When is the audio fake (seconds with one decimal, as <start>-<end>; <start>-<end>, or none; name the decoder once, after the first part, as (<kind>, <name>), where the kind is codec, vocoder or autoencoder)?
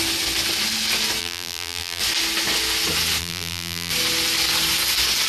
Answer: 1.2-2.0 (vocoder, BigVGAN v2); 3.2-3.9